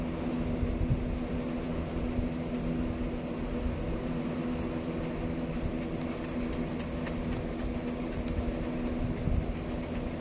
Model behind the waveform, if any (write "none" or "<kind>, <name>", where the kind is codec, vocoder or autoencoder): none